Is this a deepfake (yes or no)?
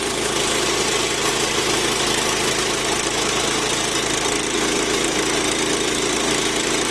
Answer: no